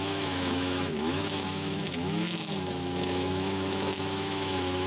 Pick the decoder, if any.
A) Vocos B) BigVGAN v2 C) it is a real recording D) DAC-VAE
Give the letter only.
D